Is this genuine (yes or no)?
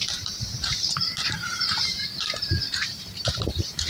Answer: no